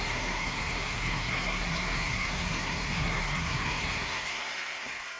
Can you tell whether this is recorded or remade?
remade